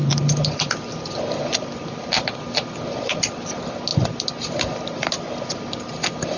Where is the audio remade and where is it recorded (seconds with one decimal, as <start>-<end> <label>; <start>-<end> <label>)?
0.0-6.4 recorded